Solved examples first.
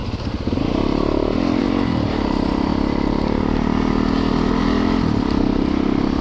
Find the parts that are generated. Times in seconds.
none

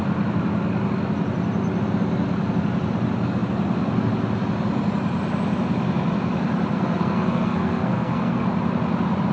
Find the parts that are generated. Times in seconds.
6.7-8.4 (codec, SNAC)

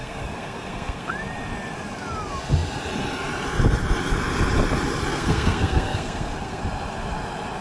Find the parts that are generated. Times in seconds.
0.0-1.1 (codec, SNAC); 5.1-6.6

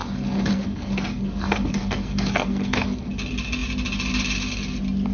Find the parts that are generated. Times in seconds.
0.0-3.1 (codec, SNAC)

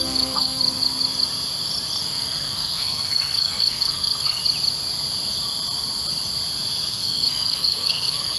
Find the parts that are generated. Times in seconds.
0.0-0.6 (codec, SNAC); 2.0-4.4; 6.9-8.4

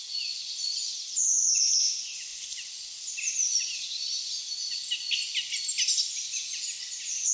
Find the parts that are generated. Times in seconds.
none

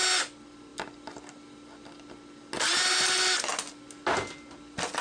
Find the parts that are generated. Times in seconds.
none

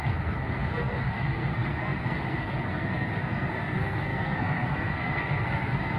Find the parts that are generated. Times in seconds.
0.0-6.0 (codec, SNAC)